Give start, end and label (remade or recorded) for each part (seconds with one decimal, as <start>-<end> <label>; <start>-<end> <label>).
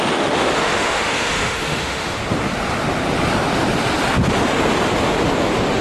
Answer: 0.0-2.2 remade; 2.2-5.8 recorded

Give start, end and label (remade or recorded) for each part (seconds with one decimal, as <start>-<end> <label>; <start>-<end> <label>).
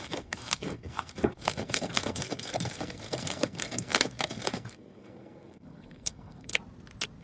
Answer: 0.0-6.5 remade; 6.5-7.2 recorded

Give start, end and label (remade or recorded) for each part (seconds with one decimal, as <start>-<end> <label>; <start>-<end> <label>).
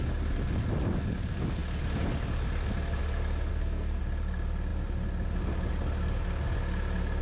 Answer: 0.0-3.5 recorded; 3.5-4.0 remade; 4.0-7.2 recorded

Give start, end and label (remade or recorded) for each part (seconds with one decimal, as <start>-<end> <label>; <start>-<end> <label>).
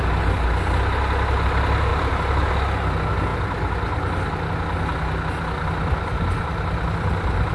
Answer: 0.0-1.9 recorded; 1.9-2.5 remade; 2.5-3.3 recorded; 3.3-4.5 remade; 4.5-7.5 recorded